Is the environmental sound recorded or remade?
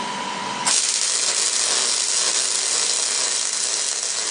recorded